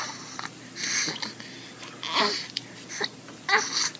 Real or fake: real